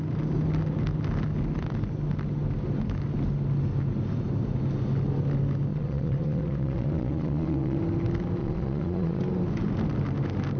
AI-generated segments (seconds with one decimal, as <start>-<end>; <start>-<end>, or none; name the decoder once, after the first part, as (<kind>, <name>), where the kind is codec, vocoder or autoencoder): 5.7-7.8 (vocoder, Vocos); 8.4-9.2